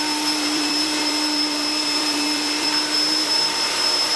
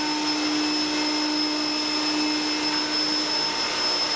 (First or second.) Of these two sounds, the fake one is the first